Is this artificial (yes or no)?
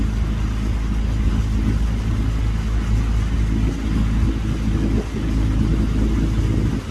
no